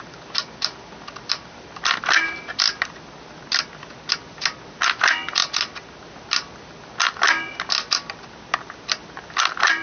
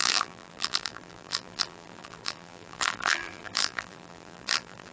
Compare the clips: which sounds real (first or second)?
first